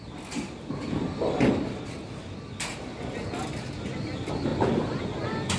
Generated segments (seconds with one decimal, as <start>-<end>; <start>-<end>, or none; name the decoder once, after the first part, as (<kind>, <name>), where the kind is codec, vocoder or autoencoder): none